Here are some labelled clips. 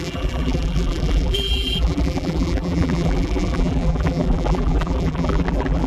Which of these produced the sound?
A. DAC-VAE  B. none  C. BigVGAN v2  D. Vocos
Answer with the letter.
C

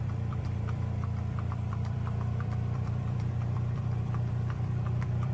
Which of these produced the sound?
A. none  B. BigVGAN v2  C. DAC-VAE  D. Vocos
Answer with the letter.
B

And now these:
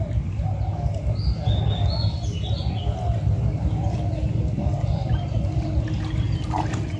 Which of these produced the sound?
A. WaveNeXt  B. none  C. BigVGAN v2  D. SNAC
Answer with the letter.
B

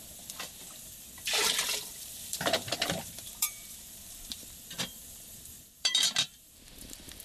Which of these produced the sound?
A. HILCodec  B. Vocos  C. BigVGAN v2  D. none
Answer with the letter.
C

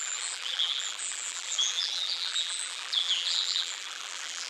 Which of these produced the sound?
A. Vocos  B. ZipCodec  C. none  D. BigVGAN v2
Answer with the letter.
D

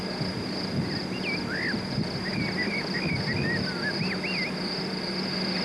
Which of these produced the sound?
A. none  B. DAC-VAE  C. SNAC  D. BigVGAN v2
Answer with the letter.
A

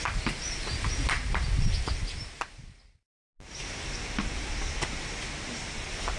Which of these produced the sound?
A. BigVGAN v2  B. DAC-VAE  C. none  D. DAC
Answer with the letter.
C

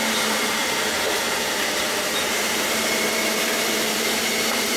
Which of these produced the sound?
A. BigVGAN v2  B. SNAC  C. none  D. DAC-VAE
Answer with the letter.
A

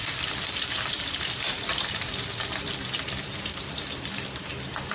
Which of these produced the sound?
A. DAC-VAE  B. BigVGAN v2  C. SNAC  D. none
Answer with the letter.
B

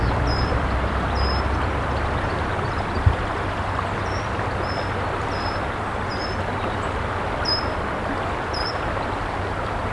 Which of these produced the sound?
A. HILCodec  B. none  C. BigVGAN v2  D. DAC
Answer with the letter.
C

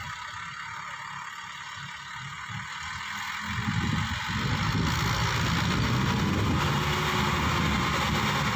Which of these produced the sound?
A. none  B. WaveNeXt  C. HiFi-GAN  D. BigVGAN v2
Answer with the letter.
A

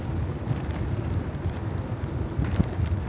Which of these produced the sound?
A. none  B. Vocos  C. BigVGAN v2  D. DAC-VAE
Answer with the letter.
C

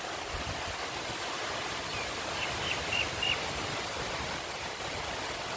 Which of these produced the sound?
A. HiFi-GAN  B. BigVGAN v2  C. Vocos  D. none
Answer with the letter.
D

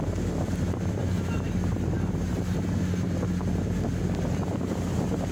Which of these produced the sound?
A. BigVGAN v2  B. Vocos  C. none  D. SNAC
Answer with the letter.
C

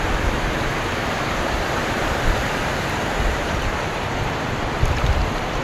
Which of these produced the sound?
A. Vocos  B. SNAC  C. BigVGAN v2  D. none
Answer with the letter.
C